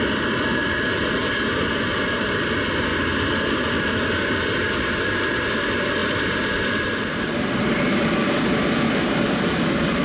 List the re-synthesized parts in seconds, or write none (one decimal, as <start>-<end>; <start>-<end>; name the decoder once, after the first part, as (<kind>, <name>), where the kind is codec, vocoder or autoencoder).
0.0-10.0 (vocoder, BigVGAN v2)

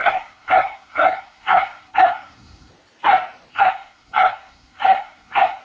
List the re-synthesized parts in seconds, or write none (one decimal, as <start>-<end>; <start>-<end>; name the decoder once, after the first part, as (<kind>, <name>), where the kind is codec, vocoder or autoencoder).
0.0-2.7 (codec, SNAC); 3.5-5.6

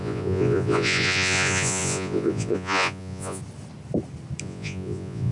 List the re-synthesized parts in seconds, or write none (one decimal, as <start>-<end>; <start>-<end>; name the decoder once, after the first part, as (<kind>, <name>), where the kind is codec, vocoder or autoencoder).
0.0-3.4 (vocoder, Vocos); 4.4-5.3

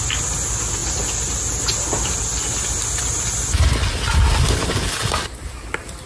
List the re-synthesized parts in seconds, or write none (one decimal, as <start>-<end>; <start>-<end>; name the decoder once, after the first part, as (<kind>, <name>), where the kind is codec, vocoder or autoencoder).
none